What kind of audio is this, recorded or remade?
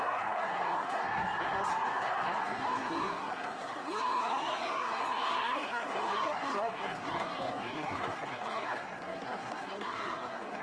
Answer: remade